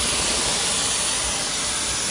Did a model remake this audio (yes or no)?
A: no